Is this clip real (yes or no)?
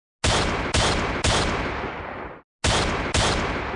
yes